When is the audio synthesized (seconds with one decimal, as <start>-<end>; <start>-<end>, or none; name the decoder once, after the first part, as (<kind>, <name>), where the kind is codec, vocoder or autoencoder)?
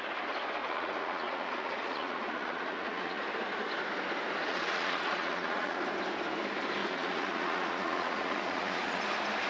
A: 0.6-3.2 (vocoder, Vocos); 4.5-5.8; 6.8-9.0